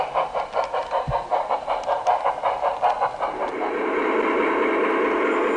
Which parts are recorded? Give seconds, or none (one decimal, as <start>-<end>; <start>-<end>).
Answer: 0.0-1.3; 2.0-5.6